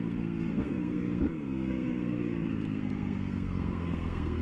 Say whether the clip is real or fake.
fake